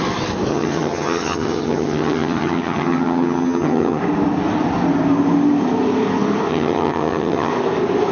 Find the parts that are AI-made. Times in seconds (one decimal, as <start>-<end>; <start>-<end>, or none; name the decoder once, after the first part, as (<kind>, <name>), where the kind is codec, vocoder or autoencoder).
0.5-4.0 (vocoder, HiFi-GAN); 6.5-7.5